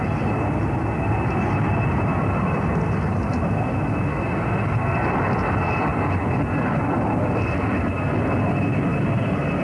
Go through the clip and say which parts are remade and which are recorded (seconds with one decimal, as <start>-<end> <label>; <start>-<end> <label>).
0.0-9.6 recorded